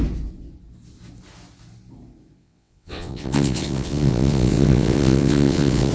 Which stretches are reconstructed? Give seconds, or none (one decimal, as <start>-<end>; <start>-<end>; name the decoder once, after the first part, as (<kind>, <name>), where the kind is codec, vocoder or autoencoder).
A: 2.4-5.9 (vocoder, WaveNeXt)